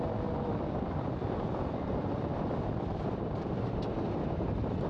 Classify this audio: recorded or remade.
recorded